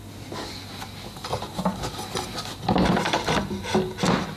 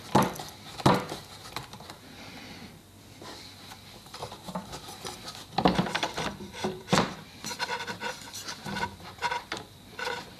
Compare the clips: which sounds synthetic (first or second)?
second